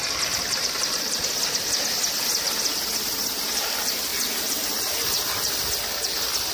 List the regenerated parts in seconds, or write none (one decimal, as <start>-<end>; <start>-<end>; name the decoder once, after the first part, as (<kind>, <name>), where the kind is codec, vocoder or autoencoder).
0.0-1.2 (vocoder, BigVGAN v2); 4.1-5.5